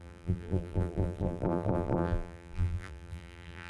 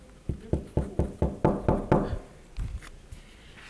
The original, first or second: second